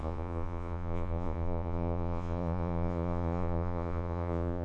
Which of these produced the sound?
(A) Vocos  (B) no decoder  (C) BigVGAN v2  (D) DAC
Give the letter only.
A